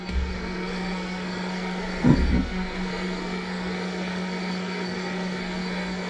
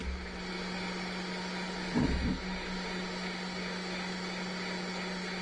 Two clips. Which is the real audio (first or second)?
second